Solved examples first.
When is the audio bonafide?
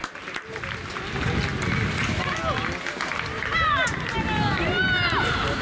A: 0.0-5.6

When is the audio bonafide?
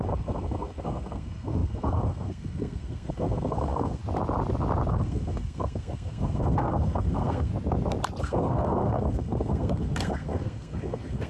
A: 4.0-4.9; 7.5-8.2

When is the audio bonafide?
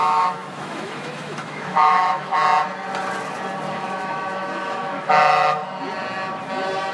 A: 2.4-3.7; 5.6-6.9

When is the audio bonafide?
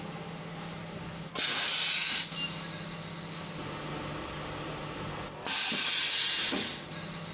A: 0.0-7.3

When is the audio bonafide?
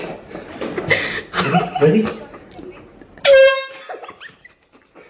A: 0.0-5.1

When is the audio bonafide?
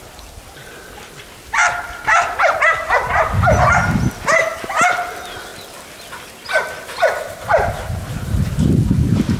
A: 0.0-9.4